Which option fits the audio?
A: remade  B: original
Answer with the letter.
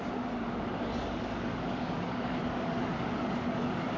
A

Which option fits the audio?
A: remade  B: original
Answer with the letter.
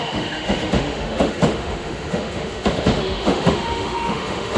A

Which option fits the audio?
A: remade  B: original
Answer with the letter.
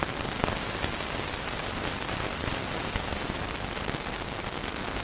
B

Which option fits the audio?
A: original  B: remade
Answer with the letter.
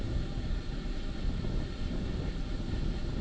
A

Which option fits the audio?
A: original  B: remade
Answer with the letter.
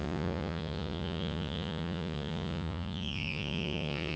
B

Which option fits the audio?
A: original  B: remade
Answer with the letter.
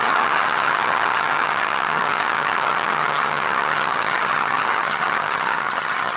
B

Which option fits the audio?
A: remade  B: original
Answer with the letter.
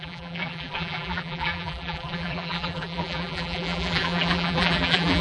A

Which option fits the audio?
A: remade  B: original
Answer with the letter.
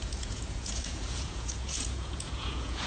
A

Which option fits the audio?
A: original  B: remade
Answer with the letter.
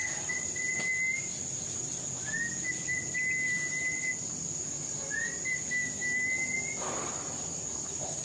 A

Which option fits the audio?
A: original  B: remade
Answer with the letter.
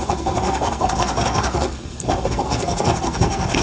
B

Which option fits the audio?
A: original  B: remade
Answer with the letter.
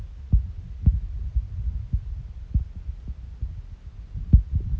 A